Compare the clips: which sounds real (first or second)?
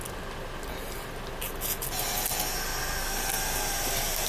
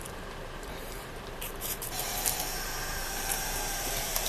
first